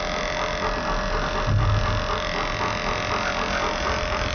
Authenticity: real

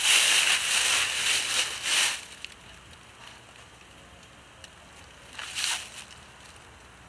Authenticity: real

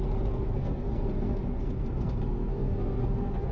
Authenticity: fake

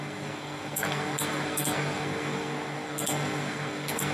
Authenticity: fake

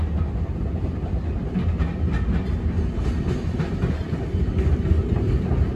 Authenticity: real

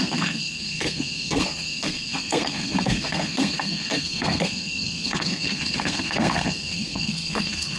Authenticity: fake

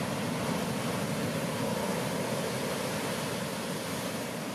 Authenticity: real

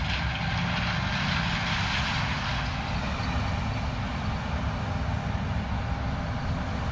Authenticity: real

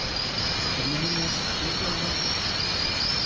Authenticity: real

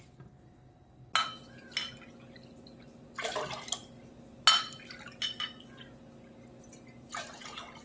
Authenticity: real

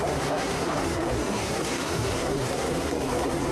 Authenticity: fake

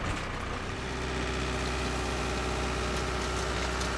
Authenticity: real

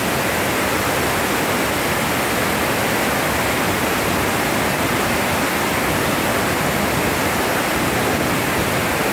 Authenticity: real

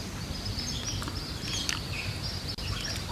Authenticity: real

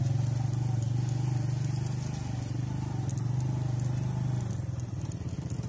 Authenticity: real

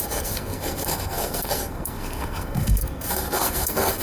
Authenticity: fake